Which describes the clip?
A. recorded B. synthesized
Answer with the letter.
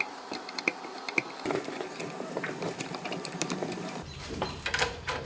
B